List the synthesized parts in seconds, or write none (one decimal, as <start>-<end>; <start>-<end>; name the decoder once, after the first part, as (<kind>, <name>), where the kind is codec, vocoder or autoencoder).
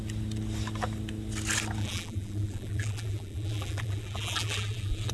1.8-5.1 (vocoder, BigVGAN v2)